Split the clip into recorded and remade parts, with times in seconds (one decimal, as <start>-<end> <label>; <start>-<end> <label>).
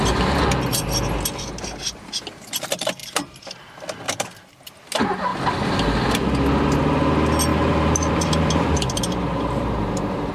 0.0-7.5 recorded; 7.5-10.3 remade